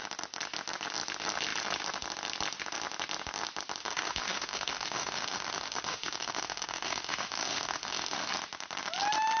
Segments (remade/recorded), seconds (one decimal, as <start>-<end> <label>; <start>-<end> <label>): 0.0-3.8 recorded; 3.8-8.3 remade; 8.3-9.4 recorded